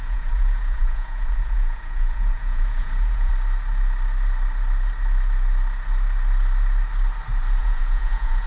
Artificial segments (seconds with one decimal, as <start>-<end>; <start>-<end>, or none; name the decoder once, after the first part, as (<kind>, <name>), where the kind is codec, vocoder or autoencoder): 0.0-3.3 (vocoder, Vocos); 7.6-8.5